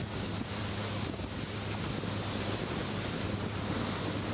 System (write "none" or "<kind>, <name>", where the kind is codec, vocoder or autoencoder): none